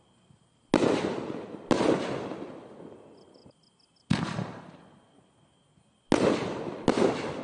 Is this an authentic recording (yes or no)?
yes